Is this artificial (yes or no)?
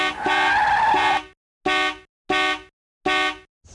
no